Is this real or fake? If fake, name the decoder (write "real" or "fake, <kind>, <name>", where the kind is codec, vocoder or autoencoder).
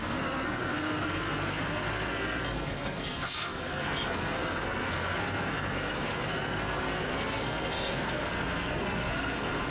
fake, codec, SNAC